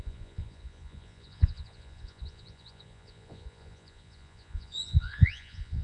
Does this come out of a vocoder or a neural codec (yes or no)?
yes